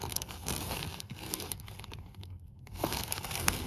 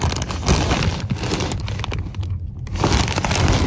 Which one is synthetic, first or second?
first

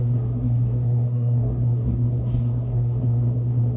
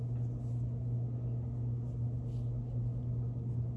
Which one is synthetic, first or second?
first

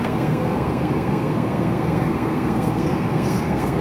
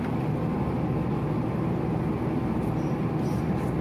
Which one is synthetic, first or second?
first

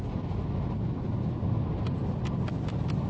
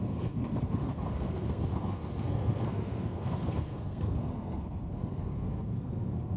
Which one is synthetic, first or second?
second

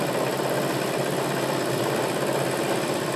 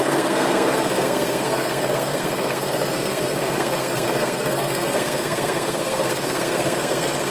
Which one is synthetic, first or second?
second